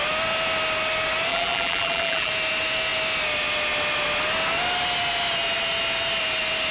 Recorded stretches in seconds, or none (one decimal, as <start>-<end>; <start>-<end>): 0.0-1.3; 2.3-6.7

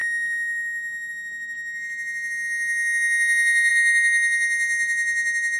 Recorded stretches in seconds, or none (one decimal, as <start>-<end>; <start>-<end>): 0.0-5.6